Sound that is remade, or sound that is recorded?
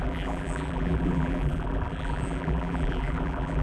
remade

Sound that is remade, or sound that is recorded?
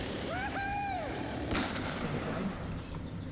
remade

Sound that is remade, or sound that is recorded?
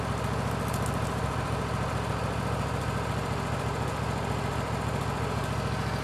recorded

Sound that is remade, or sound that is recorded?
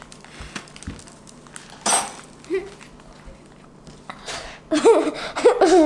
recorded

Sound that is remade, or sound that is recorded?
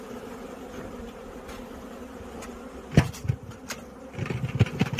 recorded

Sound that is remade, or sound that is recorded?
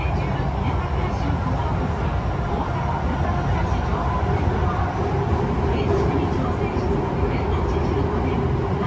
recorded